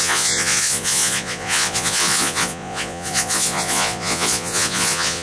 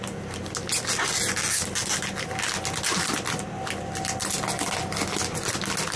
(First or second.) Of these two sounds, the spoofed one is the first